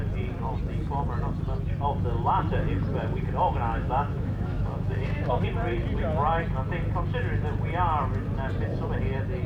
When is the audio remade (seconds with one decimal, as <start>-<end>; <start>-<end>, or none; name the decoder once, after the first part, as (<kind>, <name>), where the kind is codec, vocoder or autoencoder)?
3.7-5.4 (autoencoder, DAC-VAE)